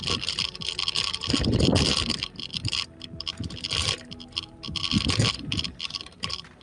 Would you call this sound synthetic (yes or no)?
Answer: no